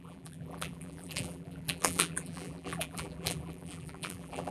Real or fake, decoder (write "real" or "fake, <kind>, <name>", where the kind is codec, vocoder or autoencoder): fake, vocoder, BigVGAN v2